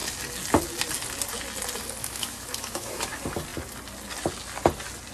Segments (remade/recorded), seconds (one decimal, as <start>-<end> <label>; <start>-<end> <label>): 0.0-2.0 recorded; 2.0-3.1 remade; 3.1-5.1 recorded

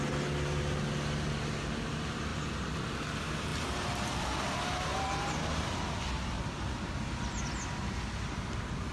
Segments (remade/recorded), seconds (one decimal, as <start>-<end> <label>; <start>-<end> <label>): 0.0-2.3 recorded; 2.3-2.8 remade; 2.8-3.5 recorded; 3.5-6.9 remade; 6.9-7.8 recorded; 7.8-8.9 remade

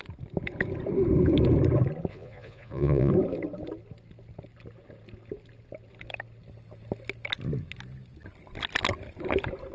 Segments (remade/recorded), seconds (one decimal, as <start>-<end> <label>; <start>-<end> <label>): 0.0-2.1 recorded; 2.1-3.1 remade; 3.1-9.7 recorded

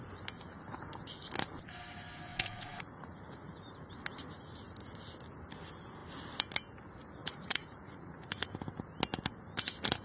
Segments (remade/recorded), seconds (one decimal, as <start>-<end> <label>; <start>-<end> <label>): 0.0-2.3 recorded; 2.3-3.9 remade; 3.9-7.2 recorded; 7.2-8.5 remade; 8.5-10.0 recorded

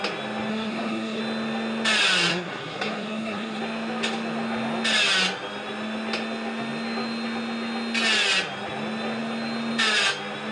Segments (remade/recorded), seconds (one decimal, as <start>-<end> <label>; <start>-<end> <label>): 0.0-0.5 recorded; 0.5-1.2 remade; 1.2-2.3 recorded; 2.3-3.6 remade; 3.6-10.5 recorded

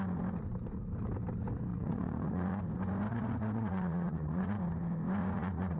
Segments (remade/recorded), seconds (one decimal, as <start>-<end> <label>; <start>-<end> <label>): 0.0-1.7 recorded; 1.7-2.6 remade; 2.6-3.1 recorded; 3.1-4.6 remade; 4.6-5.2 recorded; 5.2-5.8 remade

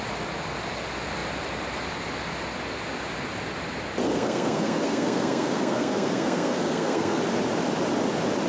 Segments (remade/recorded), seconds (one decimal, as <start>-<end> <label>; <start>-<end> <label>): 0.0-4.0 recorded; 4.0-7.2 remade; 7.2-8.5 recorded